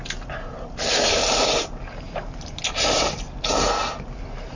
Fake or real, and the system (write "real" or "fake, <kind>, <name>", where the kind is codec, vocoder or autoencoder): real